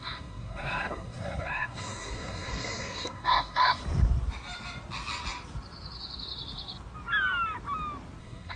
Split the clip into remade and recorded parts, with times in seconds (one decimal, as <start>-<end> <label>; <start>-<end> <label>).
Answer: 0.0-3.8 remade; 3.8-8.2 recorded; 8.2-8.6 remade